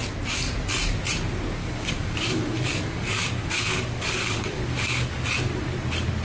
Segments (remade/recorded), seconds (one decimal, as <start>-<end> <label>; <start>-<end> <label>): 0.0-1.6 recorded; 1.6-5.3 remade; 5.3-6.2 recorded